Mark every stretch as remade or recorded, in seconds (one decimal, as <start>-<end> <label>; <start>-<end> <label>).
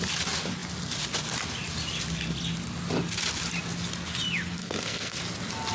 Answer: 0.0-4.6 recorded; 4.6-5.2 remade; 5.2-5.7 recorded